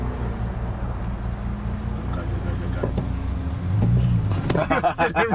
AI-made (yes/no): no